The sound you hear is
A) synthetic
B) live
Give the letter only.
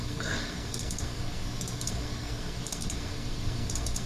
A